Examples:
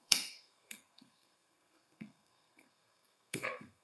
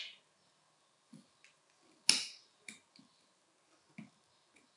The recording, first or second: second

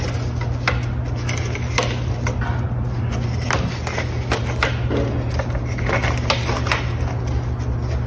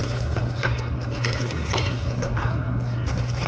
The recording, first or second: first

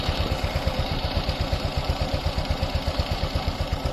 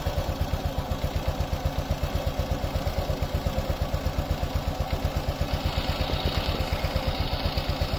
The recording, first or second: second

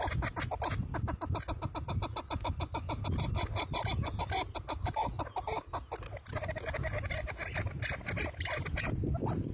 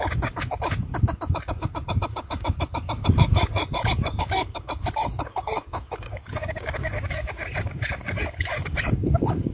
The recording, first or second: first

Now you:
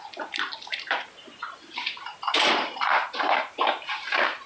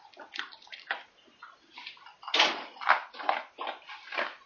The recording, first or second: second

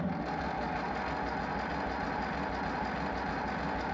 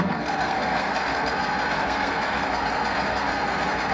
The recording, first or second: first